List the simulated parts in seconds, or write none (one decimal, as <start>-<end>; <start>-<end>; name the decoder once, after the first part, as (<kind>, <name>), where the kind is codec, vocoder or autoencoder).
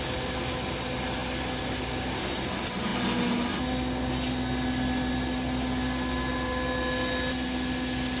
none